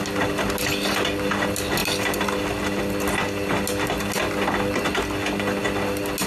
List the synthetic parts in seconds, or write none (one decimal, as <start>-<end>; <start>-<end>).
none